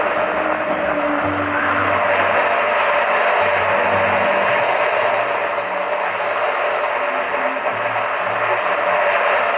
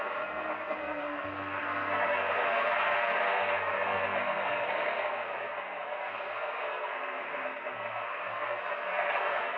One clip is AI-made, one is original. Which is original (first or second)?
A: first